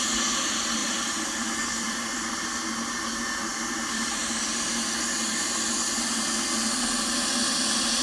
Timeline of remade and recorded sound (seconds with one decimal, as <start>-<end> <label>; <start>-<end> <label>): 0.0-0.8 recorded; 0.8-2.4 remade; 2.4-3.5 recorded; 3.5-4.3 remade; 4.3-8.0 recorded